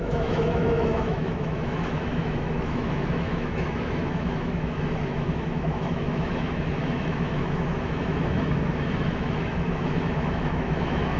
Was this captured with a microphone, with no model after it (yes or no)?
no